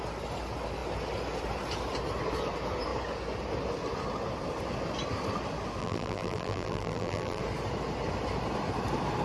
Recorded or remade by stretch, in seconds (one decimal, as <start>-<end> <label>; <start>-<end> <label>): 0.0-5.8 recorded; 5.8-7.4 remade; 7.4-9.2 recorded